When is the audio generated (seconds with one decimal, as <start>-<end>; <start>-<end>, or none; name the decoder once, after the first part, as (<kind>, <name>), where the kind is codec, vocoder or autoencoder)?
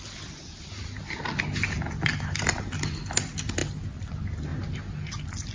3.6-4.1 (vocoder, BigVGAN v2)